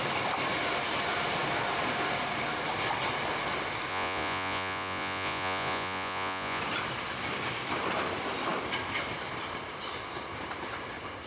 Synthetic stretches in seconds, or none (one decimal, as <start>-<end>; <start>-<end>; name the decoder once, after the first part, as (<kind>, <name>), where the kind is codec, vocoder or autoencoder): 3.9-6.6 (vocoder, Vocos)